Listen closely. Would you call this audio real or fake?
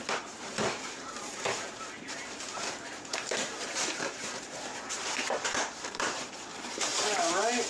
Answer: fake